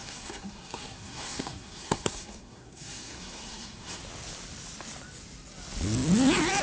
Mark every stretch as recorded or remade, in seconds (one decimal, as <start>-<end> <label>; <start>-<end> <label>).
0.0-4.0 remade; 4.0-6.6 recorded